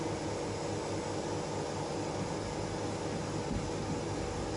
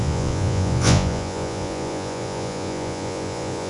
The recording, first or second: first